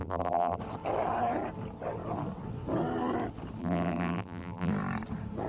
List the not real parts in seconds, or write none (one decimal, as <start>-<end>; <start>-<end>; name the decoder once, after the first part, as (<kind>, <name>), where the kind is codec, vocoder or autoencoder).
0.0-0.6 (vocoder, BigVGAN v2); 3.6-4.7